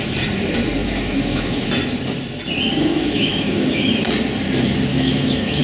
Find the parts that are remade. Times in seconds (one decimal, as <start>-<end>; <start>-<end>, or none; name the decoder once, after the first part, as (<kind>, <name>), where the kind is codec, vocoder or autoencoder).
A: 0.8-1.7 (autoencoder, DAC-VAE); 2.9-3.9; 4.9-5.6